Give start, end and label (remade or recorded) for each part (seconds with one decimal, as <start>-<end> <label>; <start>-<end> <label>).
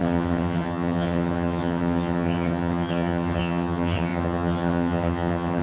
0.0-5.6 remade